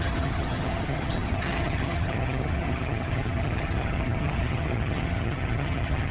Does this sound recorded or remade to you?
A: remade